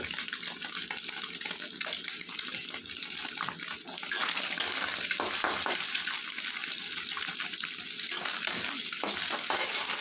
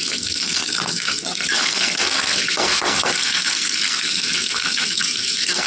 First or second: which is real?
first